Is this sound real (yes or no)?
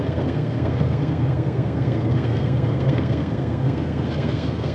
no